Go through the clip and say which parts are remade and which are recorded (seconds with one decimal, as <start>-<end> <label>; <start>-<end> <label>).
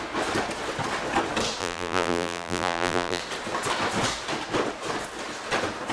0.0-1.6 recorded; 1.6-3.2 remade; 3.2-5.9 recorded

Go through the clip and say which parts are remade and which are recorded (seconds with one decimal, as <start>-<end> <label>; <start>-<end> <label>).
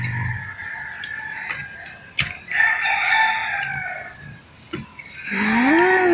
0.0-6.1 recorded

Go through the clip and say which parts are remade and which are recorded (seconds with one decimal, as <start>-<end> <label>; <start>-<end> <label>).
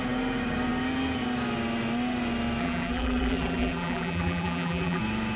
0.0-2.6 recorded; 2.6-5.0 remade; 5.0-5.4 recorded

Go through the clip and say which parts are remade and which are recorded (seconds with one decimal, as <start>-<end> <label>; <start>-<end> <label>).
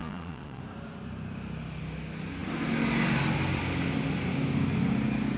0.0-0.6 remade; 0.6-5.4 recorded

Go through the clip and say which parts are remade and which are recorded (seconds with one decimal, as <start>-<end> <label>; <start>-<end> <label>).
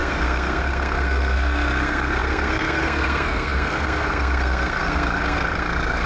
0.0-6.1 remade